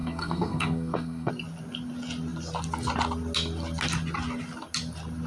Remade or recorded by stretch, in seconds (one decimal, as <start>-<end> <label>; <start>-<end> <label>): 0.0-1.3 remade; 1.3-5.3 recorded